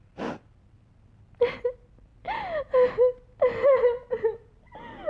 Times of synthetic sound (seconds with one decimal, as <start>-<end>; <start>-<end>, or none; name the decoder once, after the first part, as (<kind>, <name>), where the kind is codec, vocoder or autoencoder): none